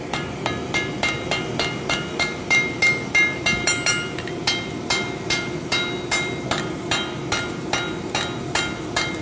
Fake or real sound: real